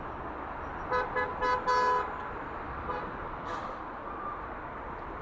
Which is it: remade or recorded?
recorded